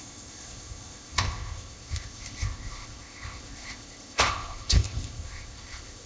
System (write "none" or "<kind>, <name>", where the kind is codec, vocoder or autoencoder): codec, ZipCodec